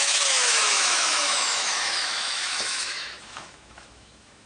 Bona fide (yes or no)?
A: no